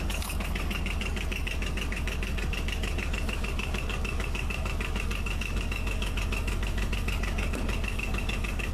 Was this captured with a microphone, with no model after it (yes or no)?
no